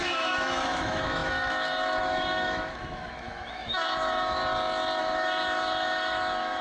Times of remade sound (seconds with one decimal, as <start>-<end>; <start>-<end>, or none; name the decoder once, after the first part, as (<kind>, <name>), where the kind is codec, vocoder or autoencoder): 0.0-4.4 (autoencoder, DAC-VAE); 5.0-6.6